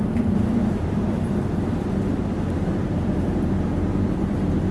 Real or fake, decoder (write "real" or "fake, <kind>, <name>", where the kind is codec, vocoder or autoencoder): fake, vocoder, BigVGAN v2